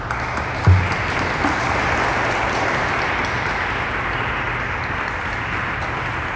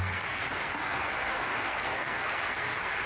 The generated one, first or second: second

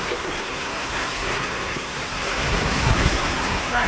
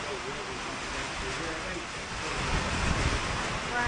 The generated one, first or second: first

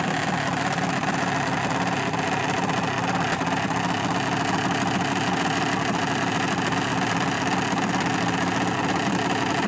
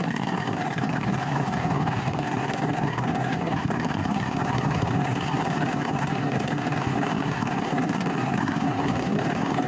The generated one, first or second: second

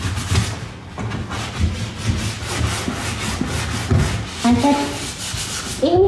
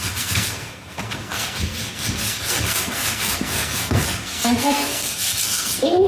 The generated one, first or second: second